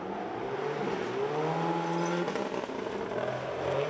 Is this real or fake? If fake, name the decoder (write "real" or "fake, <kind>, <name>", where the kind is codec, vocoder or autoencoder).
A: real